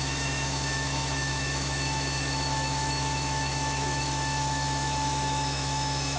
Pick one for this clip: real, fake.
fake